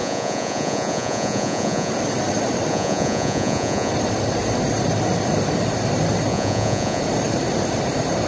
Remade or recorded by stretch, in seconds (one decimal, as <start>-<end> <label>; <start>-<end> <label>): 0.0-1.9 remade; 1.9-2.7 recorded; 2.7-3.9 remade; 3.9-6.3 recorded; 6.3-7.0 remade; 7.0-8.3 recorded